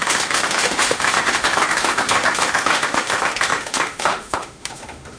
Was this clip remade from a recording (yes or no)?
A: yes